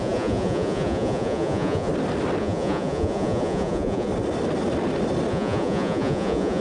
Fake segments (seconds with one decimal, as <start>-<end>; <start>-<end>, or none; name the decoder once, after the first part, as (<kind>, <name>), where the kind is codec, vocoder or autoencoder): 0.0-1.9 (vocoder, Vocos); 2.4-4.1; 5.3-6.6